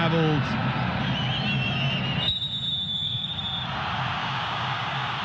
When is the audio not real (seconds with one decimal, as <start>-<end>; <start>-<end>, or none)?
2.9-3.4; 4.2-5.2